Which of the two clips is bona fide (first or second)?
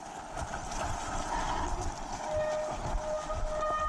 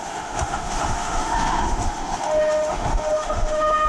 first